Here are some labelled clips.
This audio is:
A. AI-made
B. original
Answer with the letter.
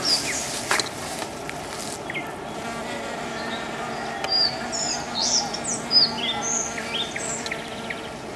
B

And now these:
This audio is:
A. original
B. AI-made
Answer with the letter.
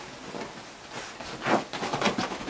A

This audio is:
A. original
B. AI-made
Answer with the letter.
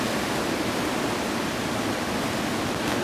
A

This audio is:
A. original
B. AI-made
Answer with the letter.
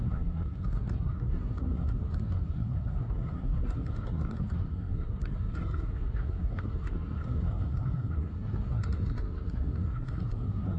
B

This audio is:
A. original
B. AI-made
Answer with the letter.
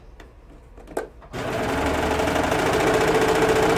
A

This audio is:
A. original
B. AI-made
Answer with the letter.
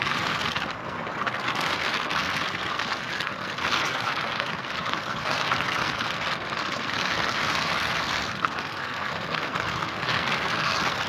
B